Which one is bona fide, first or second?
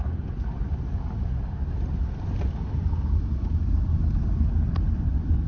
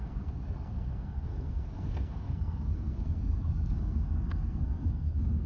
first